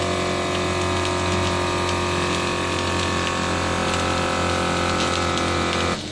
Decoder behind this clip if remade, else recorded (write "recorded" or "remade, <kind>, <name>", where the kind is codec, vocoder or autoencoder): recorded